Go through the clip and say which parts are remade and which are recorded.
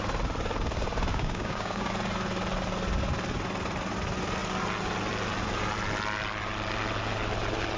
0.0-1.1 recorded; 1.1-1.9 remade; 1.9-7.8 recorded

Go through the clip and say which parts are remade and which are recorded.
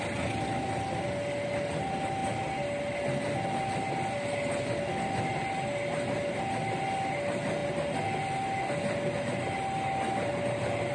0.0-10.9 recorded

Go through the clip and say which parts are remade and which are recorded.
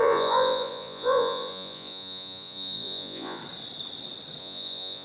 0.0-3.4 remade; 3.4-4.4 recorded; 4.4-5.0 remade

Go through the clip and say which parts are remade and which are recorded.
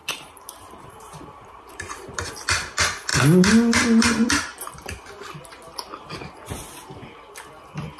0.0-2.3 remade; 2.3-8.0 recorded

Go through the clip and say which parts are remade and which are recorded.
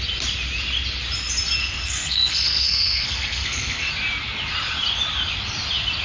0.0-1.6 recorded; 1.6-3.9 remade; 3.9-6.0 recorded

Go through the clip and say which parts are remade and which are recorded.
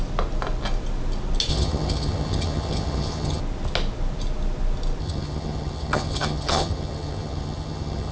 0.0-1.5 recorded; 1.5-3.4 remade; 3.4-5.0 recorded; 5.0-8.1 remade